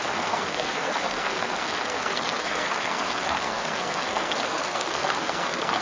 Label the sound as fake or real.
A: fake